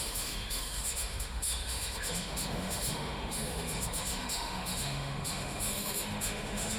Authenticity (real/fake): fake